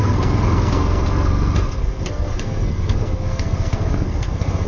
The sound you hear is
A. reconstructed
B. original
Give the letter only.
A